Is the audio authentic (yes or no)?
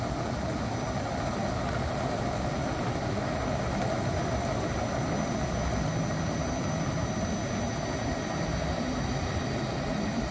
yes